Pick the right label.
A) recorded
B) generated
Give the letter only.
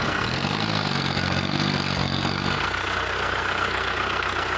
B